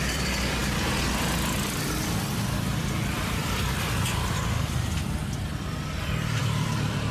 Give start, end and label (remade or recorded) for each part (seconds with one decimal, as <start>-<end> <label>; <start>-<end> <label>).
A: 0.0-5.2 remade; 5.2-6.4 recorded; 6.4-7.1 remade